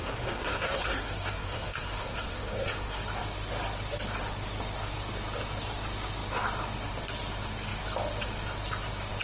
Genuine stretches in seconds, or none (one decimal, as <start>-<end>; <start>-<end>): 3.0-9.2